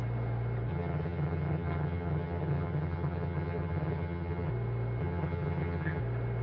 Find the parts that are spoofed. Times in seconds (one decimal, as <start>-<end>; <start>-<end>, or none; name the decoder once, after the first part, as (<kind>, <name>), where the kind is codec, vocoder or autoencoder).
0.7-4.5 (vocoder, HiFi-GAN); 5.0-6.0

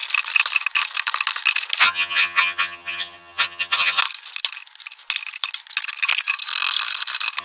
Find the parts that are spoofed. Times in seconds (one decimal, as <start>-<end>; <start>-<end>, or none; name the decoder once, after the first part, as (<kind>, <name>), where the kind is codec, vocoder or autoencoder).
1.8-4.0 (vocoder, HiFi-GAN)

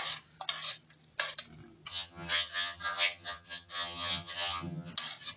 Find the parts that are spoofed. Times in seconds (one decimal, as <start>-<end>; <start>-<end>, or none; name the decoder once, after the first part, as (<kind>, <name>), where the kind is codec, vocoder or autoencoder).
1.9-4.9 (vocoder, HiFi-GAN)

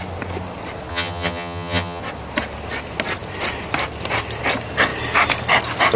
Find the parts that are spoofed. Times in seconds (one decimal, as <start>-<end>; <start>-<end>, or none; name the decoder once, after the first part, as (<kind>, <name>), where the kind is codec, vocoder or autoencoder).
0.9-2.0 (vocoder, HiFi-GAN)

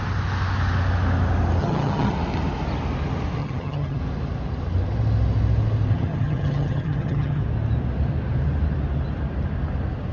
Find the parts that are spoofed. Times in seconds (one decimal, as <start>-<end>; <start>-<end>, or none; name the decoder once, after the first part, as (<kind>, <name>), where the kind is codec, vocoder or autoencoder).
1.6-2.1 (vocoder, HiFi-GAN); 3.4-4.0; 5.9-7.4

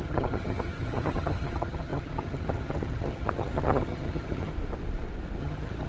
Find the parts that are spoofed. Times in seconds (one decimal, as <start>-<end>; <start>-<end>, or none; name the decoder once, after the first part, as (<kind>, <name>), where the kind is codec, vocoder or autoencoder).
0.0-4.5 (vocoder, HiFi-GAN); 5.4-5.9